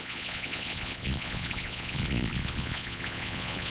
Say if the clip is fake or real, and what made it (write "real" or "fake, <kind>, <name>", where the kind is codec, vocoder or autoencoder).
fake, vocoder, Vocos